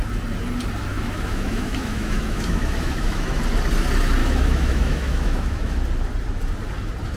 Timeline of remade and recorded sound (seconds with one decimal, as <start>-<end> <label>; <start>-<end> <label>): 0.0-0.9 recorded; 0.9-3.4 remade; 3.4-4.2 recorded; 4.2-5.8 remade; 5.8-7.2 recorded